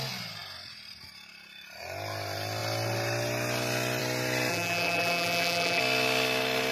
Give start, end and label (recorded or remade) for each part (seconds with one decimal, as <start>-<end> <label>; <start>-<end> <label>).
0.0-4.5 recorded; 4.5-5.8 remade; 5.8-6.7 recorded